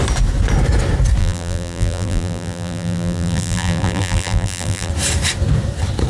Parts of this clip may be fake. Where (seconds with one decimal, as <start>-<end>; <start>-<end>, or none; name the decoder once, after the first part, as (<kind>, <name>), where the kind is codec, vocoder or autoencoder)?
1.2-4.9 (vocoder, BigVGAN v2)